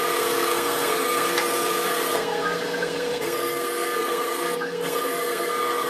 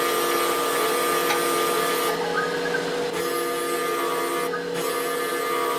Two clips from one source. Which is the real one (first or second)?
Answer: second